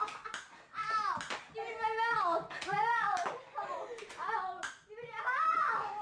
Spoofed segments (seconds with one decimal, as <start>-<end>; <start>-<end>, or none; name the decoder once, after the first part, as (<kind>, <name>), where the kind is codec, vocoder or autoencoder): none